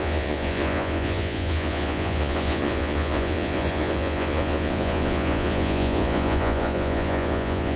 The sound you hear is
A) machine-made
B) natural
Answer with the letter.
A